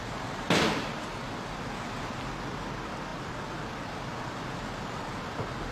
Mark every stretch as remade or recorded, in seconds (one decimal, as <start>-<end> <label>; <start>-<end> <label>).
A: 0.0-3.1 recorded; 3.1-4.6 remade; 4.6-5.7 recorded